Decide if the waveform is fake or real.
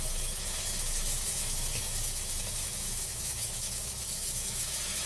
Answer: fake